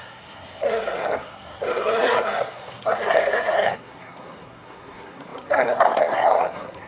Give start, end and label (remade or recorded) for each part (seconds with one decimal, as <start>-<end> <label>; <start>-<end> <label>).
0.0-6.9 remade